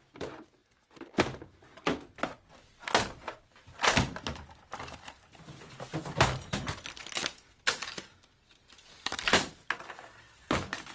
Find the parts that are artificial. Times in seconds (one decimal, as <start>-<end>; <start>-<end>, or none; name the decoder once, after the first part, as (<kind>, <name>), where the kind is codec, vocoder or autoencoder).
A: none